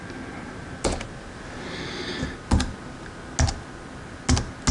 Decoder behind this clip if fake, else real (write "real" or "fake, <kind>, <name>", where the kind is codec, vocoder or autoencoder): real